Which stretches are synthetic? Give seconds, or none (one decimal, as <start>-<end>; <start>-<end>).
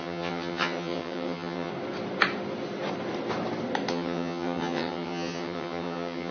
0.0-1.7; 3.9-6.3